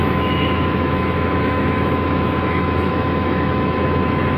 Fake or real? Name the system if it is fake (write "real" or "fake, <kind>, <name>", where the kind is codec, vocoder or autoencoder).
fake, autoencoder, DAC-VAE